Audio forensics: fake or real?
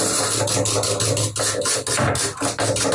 real